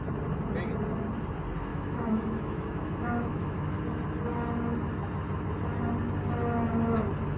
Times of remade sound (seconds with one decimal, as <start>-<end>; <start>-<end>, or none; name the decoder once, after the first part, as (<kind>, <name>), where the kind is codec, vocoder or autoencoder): 1.7-3.8 (autoencoder, DAC-VAE)